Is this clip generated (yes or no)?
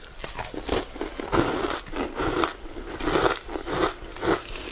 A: no